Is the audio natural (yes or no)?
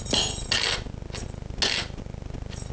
yes